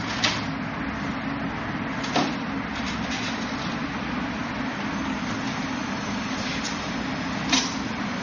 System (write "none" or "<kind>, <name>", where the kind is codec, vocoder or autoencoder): none